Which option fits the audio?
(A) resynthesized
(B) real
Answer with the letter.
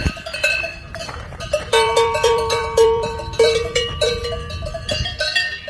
A